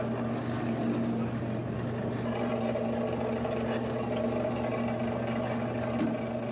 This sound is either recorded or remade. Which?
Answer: recorded